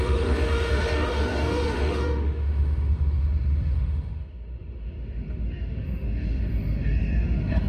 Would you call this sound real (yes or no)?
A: no